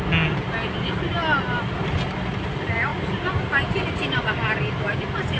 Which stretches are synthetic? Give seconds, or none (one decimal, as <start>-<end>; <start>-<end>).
2.9-4.2